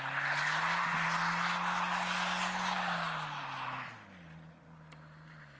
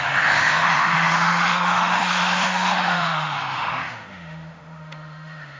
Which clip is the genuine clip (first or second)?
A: first